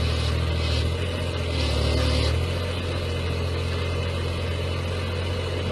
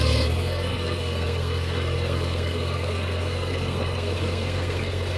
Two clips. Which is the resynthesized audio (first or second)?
second